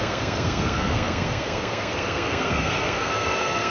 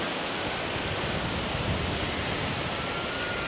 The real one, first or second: second